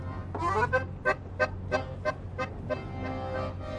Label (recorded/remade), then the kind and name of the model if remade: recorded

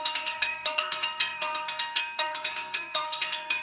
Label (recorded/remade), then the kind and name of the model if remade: remade, codec, SNAC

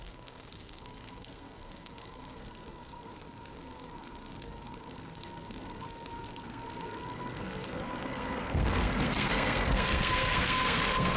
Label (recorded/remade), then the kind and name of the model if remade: remade, codec, SNAC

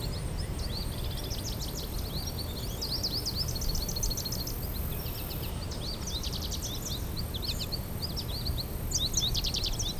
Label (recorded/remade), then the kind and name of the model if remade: recorded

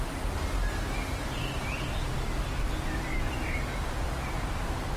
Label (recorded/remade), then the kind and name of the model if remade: recorded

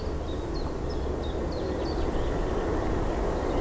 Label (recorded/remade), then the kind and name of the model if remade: recorded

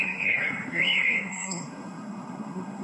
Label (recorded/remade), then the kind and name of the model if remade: remade, codec, SNAC